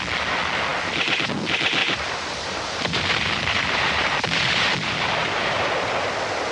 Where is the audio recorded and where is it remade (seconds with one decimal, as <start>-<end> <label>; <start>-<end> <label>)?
0.0-1.8 recorded; 1.8-5.7 remade; 5.7-6.5 recorded